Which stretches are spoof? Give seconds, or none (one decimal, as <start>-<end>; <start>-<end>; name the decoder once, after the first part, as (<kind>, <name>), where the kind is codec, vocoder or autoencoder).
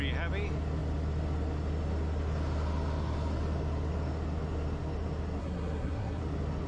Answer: 5.4-6.2 (codec, SNAC)